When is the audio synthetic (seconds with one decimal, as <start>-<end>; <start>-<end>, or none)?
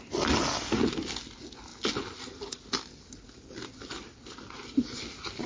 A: none